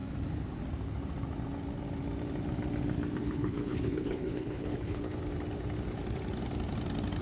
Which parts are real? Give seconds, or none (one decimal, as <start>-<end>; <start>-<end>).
0.0-3.2; 5.2-7.2